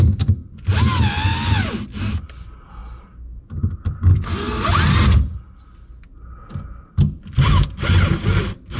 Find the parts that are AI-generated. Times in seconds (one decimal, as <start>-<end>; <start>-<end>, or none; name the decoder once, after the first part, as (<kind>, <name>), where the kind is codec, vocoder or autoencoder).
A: none